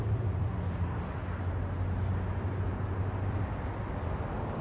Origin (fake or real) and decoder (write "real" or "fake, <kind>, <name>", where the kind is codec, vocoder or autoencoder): real